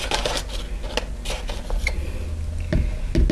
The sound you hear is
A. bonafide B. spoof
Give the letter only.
A